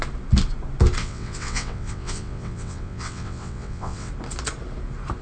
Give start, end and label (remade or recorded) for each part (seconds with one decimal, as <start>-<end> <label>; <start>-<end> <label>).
0.0-1.0 recorded; 1.0-4.1 remade; 4.1-5.2 recorded